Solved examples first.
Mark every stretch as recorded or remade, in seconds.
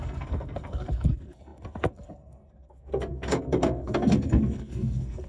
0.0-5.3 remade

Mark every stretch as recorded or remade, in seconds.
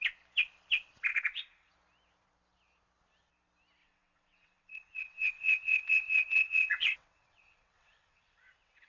0.0-1.1 recorded; 1.1-1.7 remade; 1.7-3.8 recorded; 3.8-8.9 remade